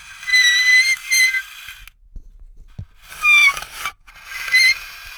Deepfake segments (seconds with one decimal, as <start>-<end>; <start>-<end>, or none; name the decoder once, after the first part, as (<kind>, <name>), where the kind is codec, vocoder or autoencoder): 3.1-4.1 (codec, DAC)